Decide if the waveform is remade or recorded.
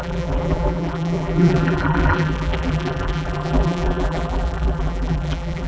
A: remade